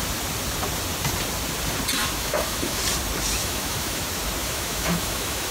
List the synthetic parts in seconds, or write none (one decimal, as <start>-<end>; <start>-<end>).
2.0-2.8; 3.4-4.0; 4.4-5.5